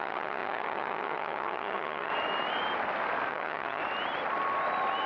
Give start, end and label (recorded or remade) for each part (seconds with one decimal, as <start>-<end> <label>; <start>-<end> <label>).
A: 0.0-2.1 remade; 2.1-3.3 recorded; 3.3-3.8 remade; 3.8-5.1 recorded